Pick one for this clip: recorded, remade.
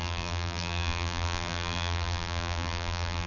remade